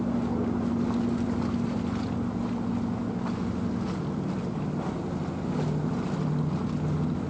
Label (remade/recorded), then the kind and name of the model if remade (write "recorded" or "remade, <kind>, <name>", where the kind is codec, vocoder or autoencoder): recorded